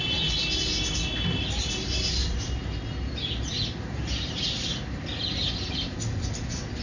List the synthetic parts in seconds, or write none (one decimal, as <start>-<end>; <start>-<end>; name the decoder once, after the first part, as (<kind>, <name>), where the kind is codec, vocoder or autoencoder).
none

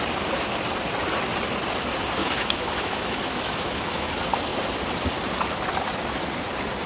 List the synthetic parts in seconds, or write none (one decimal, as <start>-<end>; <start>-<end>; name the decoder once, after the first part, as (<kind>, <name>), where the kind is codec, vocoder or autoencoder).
2.2-4.1 (autoencoder, DAC-VAE)

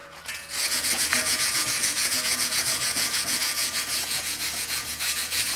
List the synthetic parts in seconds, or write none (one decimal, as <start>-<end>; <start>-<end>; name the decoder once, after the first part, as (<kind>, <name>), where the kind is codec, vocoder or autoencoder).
0.0-5.6 (vocoder, Vocos)

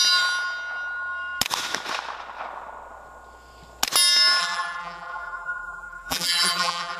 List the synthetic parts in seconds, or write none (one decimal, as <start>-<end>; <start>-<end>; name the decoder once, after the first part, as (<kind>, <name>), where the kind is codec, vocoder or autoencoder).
4.4-7.0 (vocoder, BigVGAN v2)

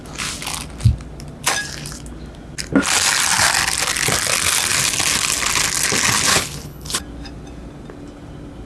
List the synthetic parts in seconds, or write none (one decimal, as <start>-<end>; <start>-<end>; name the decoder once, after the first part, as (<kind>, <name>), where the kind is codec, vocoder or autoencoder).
6.3-7.0 (codec, HILCodec)

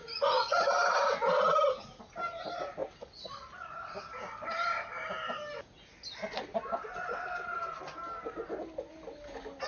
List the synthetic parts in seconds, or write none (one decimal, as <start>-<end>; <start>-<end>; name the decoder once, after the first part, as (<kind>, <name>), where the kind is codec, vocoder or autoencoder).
0.0-0.7 (vocoder, Vocos)

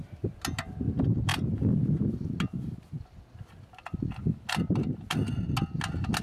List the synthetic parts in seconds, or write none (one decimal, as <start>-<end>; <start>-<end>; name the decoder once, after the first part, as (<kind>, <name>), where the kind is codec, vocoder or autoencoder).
none

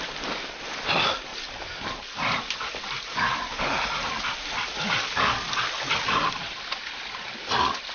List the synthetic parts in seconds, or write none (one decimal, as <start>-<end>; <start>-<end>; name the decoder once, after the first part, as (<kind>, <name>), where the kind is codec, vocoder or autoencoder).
1.3-2.8 (vocoder, BigVGAN v2); 3.5-6.4